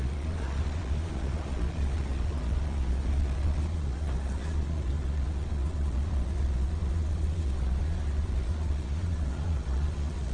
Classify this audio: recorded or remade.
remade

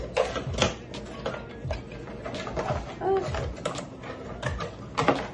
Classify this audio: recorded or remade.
recorded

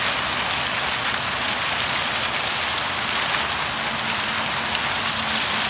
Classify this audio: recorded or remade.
recorded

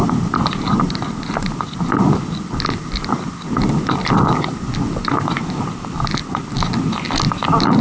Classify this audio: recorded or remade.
recorded